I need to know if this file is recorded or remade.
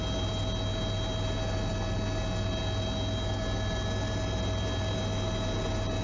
recorded